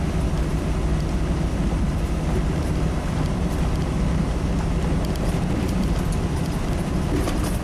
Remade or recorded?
remade